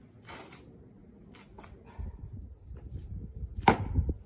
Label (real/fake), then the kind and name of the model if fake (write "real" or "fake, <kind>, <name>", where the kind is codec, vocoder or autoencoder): real